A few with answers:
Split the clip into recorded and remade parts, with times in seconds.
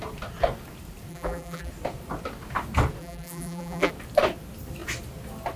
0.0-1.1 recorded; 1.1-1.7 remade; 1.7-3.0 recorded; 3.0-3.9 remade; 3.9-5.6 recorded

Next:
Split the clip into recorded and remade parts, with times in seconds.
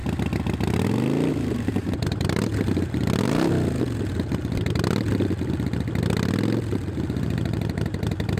0.0-1.3 recorded; 1.3-2.5 remade; 2.5-7.2 recorded; 7.2-8.4 remade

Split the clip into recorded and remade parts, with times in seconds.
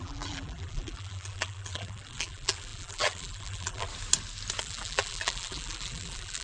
0.0-3.9 remade; 3.9-4.6 recorded; 4.6-6.4 remade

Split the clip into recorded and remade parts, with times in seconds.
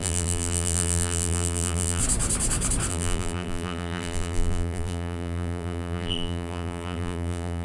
0.0-2.0 remade; 2.0-2.9 recorded; 2.9-7.6 remade